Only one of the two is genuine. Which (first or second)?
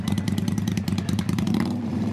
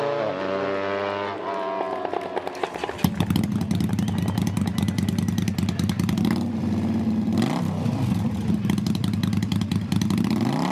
second